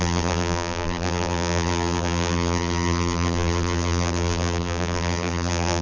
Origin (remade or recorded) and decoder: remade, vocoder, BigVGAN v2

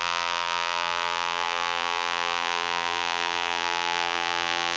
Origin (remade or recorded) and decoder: remade, vocoder, BigVGAN v2